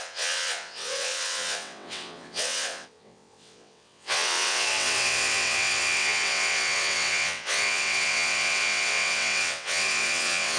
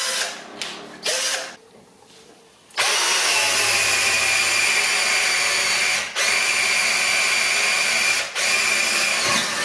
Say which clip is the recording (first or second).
second